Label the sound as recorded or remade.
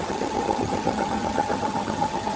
remade